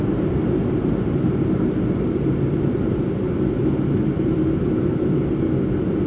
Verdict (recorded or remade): recorded